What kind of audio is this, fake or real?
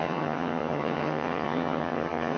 fake